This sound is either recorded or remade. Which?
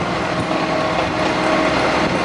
recorded